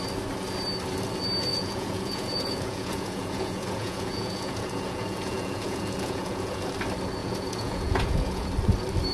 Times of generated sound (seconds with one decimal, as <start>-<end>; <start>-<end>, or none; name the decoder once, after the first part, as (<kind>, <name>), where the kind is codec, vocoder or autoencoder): 1.5-6.6 (vocoder, Vocos); 7.2-8.5